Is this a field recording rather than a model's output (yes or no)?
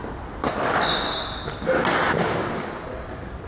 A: yes